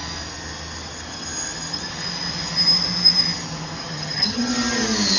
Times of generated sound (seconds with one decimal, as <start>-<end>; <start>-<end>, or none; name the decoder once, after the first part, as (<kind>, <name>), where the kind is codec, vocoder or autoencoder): 3.8-4.5 (vocoder, HiFi-GAN)